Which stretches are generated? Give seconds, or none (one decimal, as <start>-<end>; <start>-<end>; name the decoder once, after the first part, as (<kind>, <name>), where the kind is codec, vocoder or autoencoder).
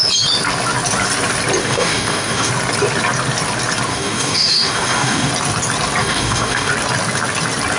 1.6-2.5 (codec, DAC); 3.9-5.3; 6.0-6.7